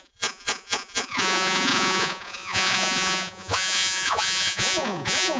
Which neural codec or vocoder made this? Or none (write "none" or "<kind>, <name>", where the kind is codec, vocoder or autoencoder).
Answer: vocoder, Vocos